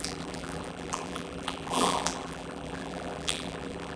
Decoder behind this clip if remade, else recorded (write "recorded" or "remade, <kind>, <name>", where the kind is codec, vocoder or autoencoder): remade, vocoder, BigVGAN v2